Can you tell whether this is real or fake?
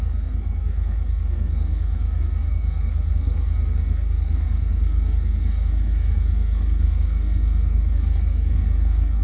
fake